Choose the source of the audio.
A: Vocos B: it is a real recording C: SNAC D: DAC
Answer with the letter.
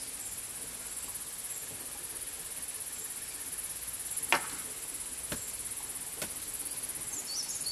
B